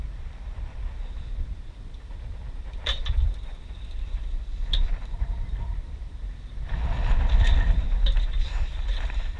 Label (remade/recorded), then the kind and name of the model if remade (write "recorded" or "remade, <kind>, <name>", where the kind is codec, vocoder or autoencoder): remade, vocoder, BigVGAN v2